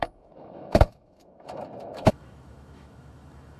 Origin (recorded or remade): remade